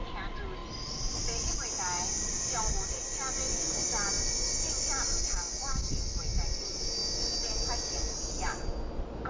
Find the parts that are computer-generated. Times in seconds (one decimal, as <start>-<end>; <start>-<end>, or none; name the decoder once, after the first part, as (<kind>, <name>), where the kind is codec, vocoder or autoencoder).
none